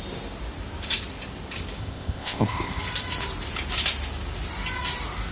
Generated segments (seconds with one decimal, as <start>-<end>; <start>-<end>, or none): 1.8-2.8